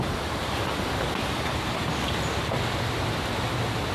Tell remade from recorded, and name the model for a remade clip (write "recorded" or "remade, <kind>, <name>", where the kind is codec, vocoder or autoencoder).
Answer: recorded